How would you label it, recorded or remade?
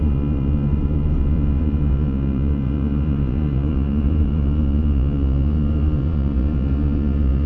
remade